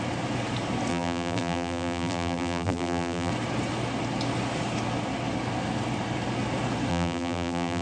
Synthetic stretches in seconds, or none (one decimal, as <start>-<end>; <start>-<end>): 0.9-3.3; 6.9-7.8